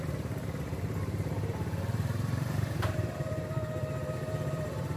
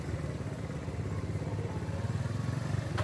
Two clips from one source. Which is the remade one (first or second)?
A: first